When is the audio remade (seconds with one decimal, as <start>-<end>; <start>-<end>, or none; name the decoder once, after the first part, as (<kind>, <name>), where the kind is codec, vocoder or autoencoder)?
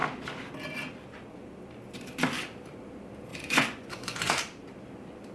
3.3-4.3 (vocoder, Vocos)